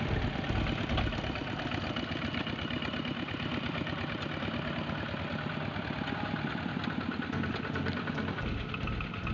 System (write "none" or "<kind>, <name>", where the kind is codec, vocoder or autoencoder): none